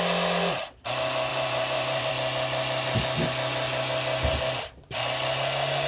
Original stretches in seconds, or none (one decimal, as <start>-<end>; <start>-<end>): 0.0-1.3; 2.1-5.9